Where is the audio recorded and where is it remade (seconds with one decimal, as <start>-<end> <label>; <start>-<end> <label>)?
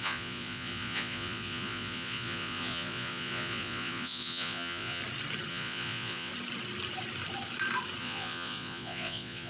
0.0-5.0 remade; 5.0-5.5 recorded; 5.5-6.3 remade; 6.3-8.0 recorded; 8.0-9.5 remade